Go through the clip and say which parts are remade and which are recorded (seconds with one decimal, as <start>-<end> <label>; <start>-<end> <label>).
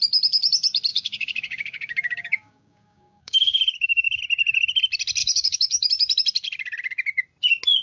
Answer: 0.0-0.9 recorded; 0.9-4.2 remade; 4.2-5.2 recorded; 5.2-5.9 remade; 5.9-7.8 recorded